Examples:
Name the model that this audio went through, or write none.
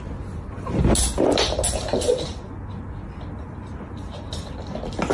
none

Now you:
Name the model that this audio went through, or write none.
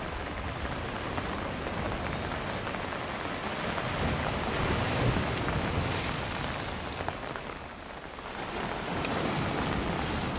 none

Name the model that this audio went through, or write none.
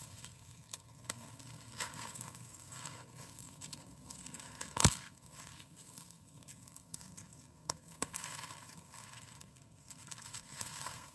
codec, SNAC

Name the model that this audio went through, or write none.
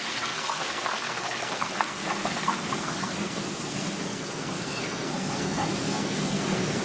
codec, SNAC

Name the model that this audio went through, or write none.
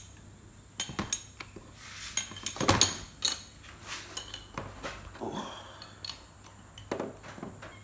none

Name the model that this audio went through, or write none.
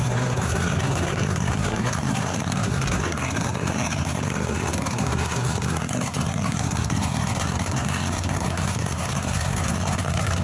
codec, SNAC